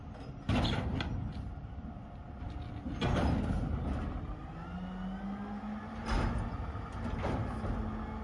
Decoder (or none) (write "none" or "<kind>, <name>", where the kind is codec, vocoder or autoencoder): none